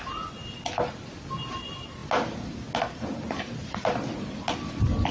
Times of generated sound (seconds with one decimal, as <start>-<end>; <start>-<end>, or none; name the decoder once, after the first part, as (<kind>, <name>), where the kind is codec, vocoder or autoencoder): none